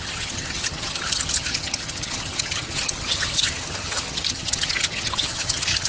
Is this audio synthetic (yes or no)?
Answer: yes